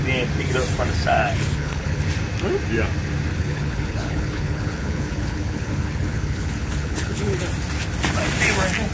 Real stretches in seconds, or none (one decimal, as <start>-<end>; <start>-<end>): 0.0-1.2; 2.0-3.3; 7.4-8.9